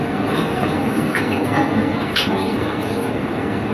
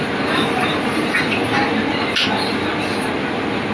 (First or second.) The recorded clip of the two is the second